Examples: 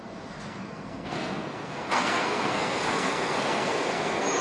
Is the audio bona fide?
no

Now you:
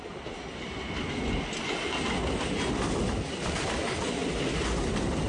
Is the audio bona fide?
yes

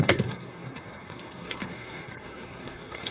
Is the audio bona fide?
no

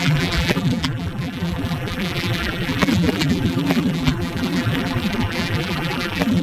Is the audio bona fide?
no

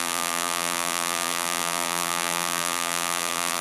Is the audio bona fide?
no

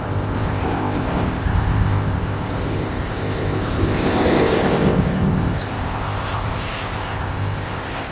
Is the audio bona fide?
no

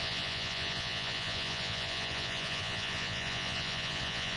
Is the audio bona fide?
no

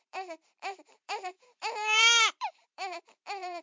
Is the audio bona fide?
no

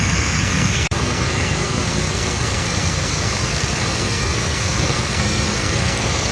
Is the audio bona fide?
no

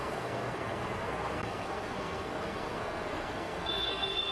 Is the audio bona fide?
no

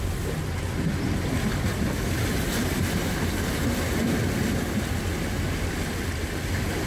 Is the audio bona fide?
yes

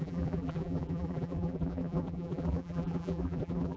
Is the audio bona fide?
no